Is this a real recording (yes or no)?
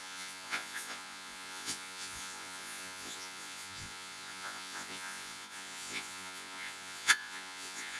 no